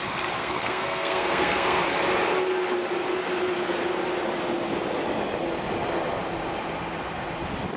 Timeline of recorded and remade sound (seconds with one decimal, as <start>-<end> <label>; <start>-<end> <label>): 0.0-0.4 recorded; 0.4-1.8 remade; 1.8-7.8 recorded